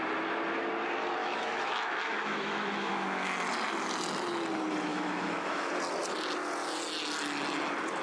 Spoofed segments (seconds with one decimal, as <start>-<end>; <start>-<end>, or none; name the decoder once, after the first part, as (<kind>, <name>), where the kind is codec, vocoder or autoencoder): 1.2-3.3 (autoencoder, DAC-VAE); 4.9-5.7